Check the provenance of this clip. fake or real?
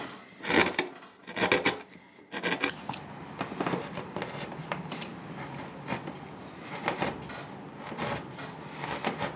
real